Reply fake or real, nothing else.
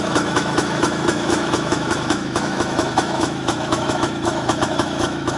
fake